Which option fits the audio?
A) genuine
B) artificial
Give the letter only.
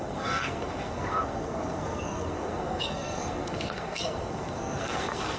B